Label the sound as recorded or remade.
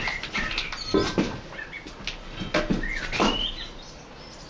recorded